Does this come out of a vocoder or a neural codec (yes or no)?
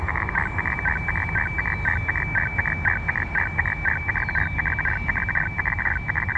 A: no